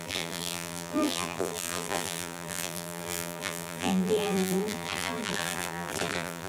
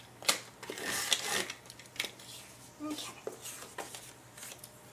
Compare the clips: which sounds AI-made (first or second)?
first